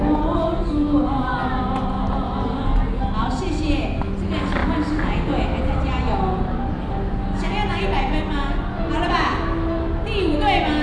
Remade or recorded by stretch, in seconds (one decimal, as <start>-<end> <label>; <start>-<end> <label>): 0.0-10.8 recorded